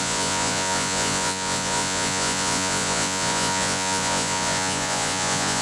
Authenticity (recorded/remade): remade